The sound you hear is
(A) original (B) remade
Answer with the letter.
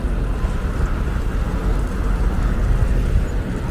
A